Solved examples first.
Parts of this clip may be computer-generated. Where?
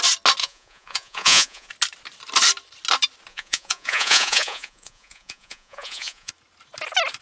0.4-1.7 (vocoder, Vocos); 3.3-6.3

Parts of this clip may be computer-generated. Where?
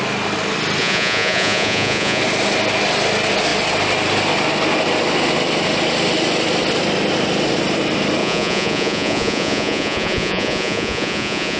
0.8-2.2 (vocoder, Vocos); 8.2-11.6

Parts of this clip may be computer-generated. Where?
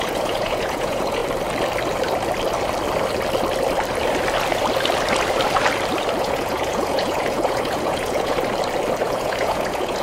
0.0-1.2 (vocoder, Vocos); 6.2-8.4; 9.0-10.0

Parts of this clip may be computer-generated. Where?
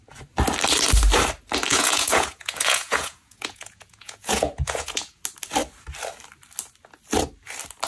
1.7-5.2 (vocoder, Vocos)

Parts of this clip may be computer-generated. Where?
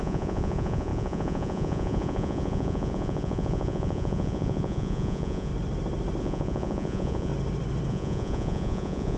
0.0-5.5 (vocoder, Vocos); 6.2-7.3; 7.9-9.2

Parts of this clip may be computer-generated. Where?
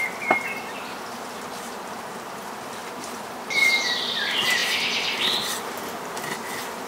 none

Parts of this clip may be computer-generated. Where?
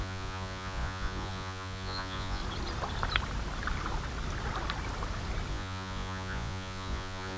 0.0-2.4 (vocoder, Vocos); 5.5-7.4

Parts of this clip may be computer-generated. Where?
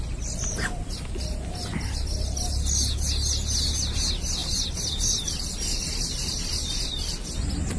none